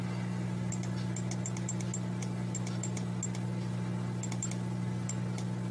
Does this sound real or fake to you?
real